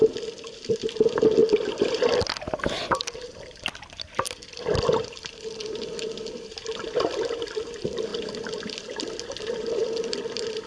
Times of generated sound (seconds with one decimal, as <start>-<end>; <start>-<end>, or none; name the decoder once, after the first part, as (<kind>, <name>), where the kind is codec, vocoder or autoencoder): 0.0-1.4 (vocoder, BigVGAN v2); 1.9-8.1; 9.4-10.7